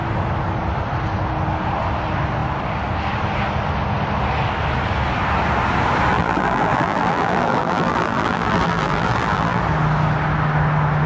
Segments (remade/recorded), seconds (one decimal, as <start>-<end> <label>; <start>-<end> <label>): 0.0-6.1 recorded; 6.1-9.6 remade; 9.6-11.1 recorded